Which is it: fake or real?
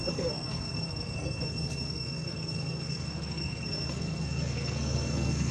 fake